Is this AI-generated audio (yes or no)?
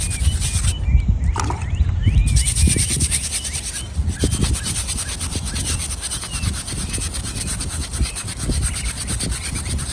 no